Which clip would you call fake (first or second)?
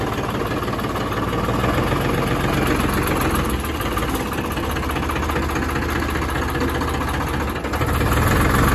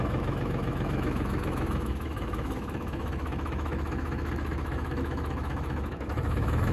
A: second